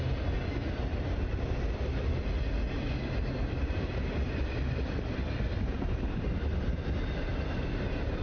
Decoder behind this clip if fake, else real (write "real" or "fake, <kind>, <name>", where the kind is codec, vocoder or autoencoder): real